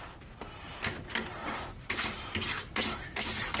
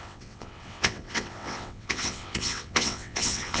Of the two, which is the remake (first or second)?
second